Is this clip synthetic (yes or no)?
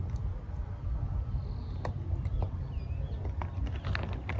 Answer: no